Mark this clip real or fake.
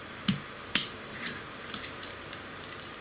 fake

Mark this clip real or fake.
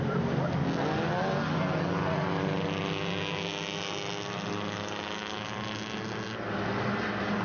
real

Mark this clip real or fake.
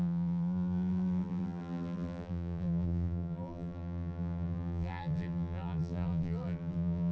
fake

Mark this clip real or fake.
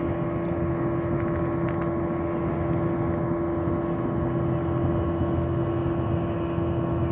real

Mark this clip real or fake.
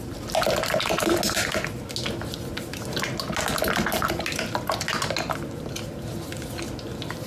real